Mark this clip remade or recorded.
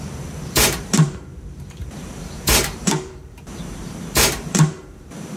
remade